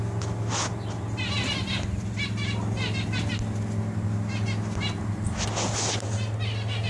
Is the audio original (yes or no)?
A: yes